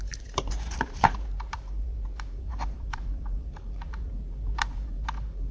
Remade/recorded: remade